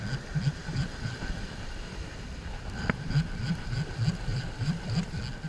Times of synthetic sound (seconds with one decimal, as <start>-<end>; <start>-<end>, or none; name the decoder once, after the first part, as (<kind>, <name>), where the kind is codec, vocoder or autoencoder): 0.6-3.9 (vocoder, BigVGAN v2); 4.3-5.1